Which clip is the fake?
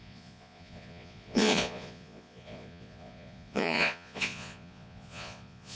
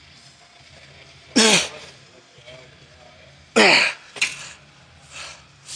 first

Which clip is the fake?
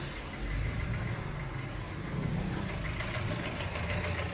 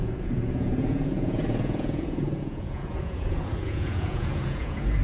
second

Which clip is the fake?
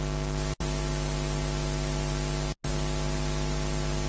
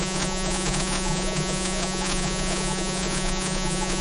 second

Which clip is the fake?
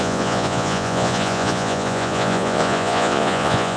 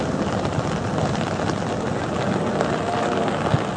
first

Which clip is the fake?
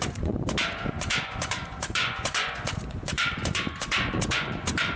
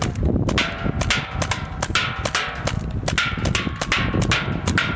first